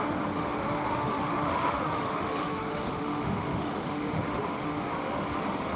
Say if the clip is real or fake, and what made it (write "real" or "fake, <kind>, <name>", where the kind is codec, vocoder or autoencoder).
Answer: fake, autoencoder, DAC-VAE